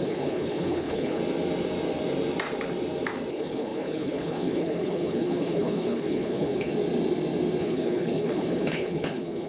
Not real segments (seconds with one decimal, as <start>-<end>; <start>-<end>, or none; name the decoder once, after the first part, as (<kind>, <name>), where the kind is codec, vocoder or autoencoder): 0.0-1.2 (codec, HILCodec); 3.3-6.7; 7.6-9.5